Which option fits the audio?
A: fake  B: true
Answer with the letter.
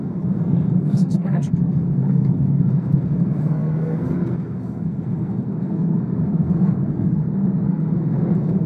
A